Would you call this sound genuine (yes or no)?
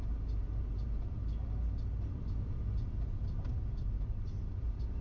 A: yes